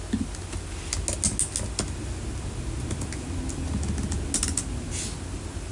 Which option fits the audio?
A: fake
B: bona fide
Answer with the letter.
B